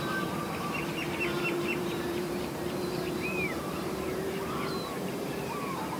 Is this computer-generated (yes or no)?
yes